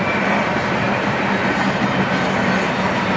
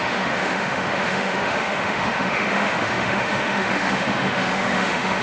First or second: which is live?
first